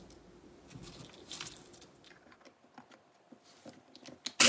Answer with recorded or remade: recorded